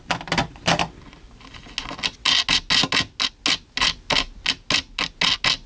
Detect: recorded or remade recorded